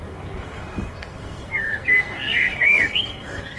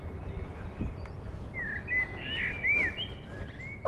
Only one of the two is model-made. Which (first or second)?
first